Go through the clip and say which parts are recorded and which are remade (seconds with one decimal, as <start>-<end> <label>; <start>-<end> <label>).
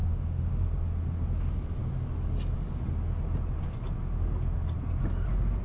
0.0-0.5 remade; 0.5-5.6 recorded